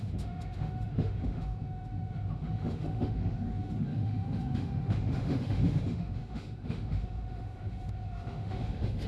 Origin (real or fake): fake